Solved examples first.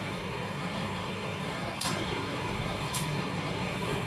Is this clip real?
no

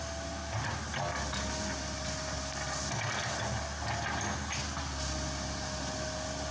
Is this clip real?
yes